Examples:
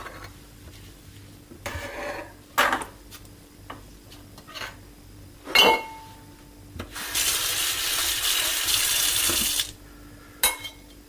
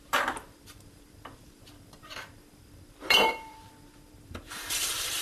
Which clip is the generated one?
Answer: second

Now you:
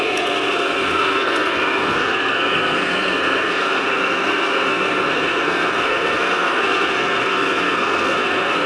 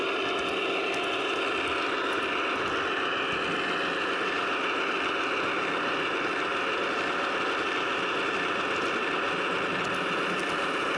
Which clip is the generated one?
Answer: first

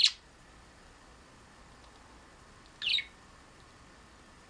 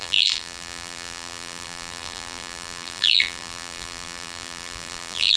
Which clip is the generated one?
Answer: second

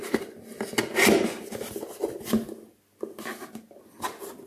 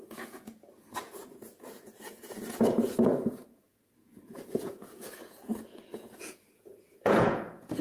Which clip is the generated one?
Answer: second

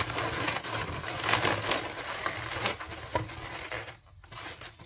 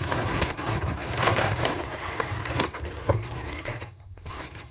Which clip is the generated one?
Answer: second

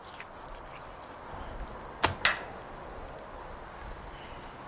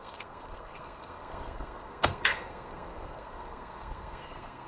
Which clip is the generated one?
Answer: second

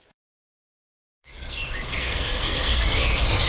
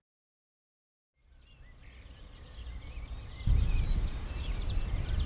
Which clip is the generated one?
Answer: first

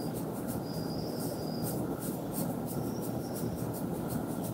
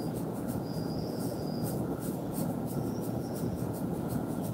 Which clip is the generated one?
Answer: second